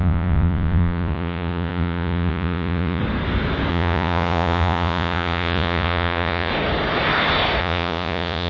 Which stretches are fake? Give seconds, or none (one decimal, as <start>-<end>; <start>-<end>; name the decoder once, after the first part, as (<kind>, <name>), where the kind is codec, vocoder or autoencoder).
0.0-3.0 (vocoder, Vocos); 3.7-6.5; 7.6-8.5